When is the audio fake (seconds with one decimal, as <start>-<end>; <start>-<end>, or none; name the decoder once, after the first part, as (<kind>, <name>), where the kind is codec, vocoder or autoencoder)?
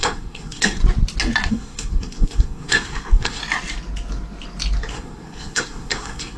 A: 0.0-0.8 (codec, SNAC); 1.5-3.4; 4.9-6.4